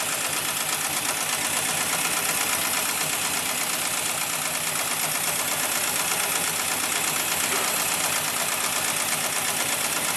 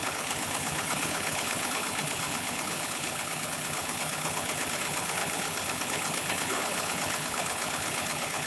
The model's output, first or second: second